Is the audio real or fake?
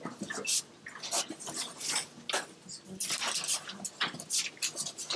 real